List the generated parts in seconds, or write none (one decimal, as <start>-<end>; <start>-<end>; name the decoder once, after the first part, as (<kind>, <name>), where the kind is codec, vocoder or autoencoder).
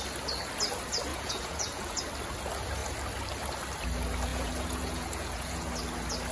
1.1-2.0 (vocoder, Vocos); 4.3-5.7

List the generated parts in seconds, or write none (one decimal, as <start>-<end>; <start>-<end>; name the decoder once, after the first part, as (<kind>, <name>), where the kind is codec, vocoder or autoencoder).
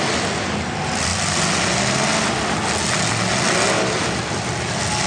none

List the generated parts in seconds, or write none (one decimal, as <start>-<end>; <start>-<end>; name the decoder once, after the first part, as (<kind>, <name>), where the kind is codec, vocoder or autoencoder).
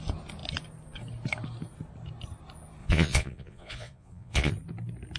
2.8-4.5 (vocoder, Vocos)